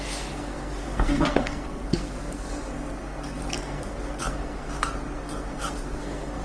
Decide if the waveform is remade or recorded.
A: remade